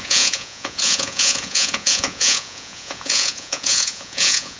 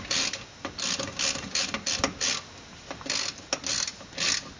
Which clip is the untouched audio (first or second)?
second